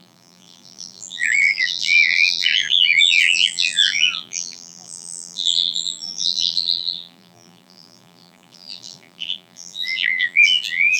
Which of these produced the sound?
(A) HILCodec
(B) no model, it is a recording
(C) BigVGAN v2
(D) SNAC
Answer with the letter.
C